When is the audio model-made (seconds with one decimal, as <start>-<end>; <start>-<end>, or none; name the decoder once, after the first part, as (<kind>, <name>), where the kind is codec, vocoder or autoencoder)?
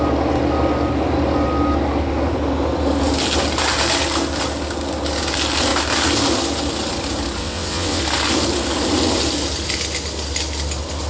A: 7.4-8.0 (vocoder, WaveNeXt)